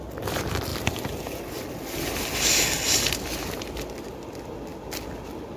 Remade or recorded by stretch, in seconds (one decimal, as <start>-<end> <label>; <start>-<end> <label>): 0.0-5.6 recorded